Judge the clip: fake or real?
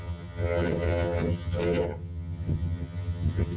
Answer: fake